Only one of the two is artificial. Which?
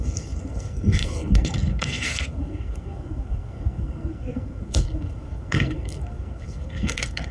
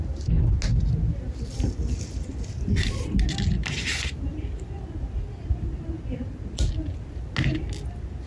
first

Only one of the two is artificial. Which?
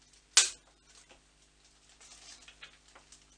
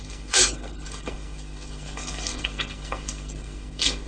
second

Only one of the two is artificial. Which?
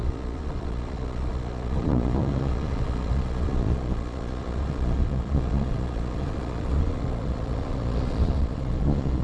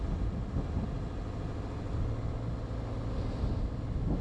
first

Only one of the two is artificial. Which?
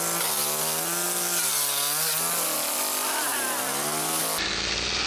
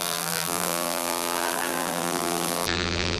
second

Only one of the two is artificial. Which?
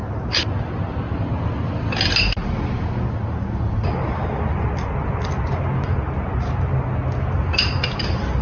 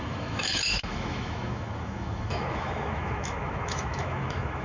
second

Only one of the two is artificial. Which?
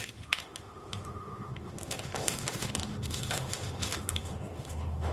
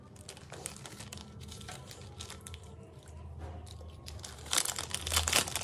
first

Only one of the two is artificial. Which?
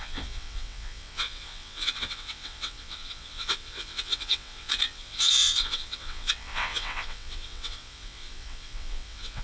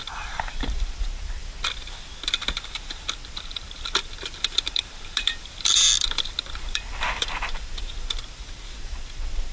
first